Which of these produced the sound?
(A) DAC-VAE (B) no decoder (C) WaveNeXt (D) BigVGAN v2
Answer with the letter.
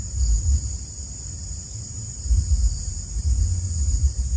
D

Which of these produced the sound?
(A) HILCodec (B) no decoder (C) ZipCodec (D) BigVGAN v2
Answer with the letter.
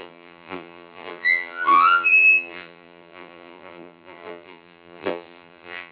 D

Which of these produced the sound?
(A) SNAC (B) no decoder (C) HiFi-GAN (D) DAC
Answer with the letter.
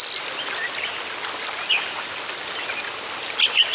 B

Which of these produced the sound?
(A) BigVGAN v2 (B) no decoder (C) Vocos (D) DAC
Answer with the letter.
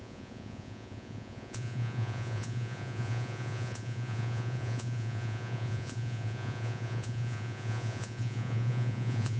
C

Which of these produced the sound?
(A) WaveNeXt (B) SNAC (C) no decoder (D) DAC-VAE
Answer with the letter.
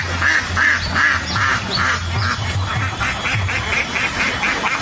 C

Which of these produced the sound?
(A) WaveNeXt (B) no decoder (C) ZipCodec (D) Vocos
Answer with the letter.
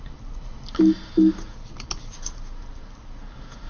B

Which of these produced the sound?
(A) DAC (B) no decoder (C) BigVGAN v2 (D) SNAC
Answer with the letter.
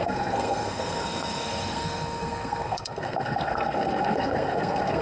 D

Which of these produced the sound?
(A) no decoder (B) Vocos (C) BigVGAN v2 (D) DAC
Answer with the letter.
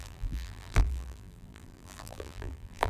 C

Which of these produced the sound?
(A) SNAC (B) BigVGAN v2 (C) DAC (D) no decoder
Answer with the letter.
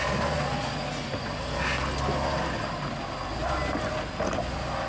D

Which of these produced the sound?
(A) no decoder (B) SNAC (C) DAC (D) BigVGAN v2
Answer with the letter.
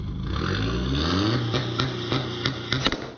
A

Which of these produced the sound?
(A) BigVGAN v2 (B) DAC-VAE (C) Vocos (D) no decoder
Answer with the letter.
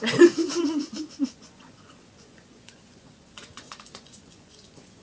C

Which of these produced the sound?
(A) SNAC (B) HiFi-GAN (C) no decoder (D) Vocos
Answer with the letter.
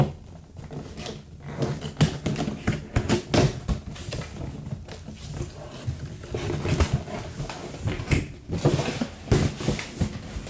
C